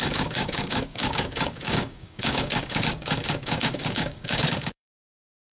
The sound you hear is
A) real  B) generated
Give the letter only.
B